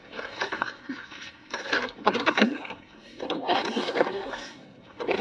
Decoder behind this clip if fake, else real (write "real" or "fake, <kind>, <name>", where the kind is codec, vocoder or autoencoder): fake, codec, SNAC